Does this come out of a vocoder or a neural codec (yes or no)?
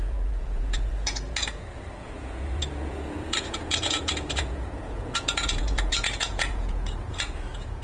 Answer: yes